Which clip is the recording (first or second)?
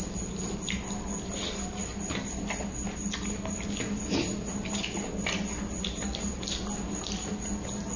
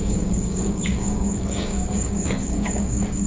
first